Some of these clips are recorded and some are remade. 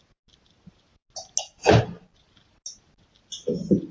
recorded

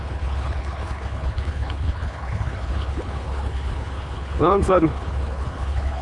remade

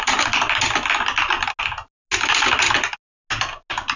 recorded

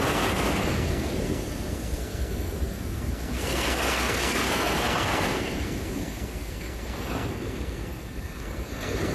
remade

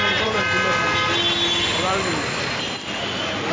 recorded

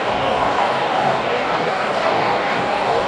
remade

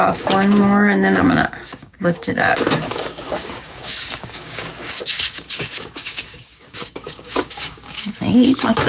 remade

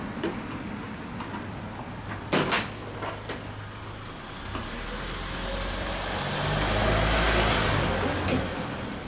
recorded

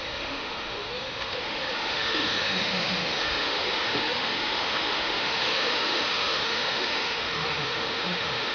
remade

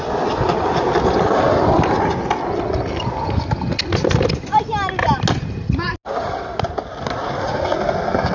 recorded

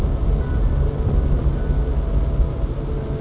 recorded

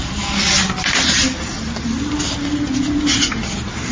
recorded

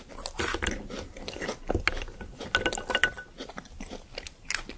recorded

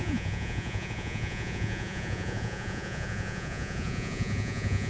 remade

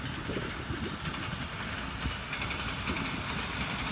recorded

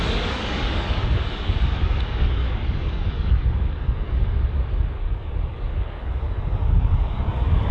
remade